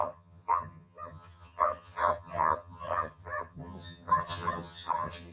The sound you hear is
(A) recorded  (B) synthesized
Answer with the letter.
B